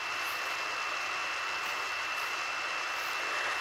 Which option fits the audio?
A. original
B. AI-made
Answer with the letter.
A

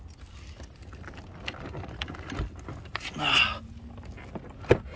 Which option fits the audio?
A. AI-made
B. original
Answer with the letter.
B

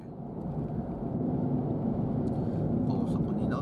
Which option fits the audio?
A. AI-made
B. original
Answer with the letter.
B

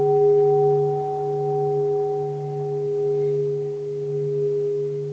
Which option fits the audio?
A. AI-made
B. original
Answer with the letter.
B